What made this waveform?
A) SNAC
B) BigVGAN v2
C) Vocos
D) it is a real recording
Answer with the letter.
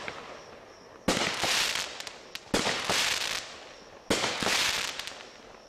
D